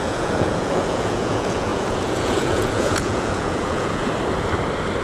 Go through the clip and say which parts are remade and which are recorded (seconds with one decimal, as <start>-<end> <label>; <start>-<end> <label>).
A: 0.0-4.0 remade; 4.0-5.0 recorded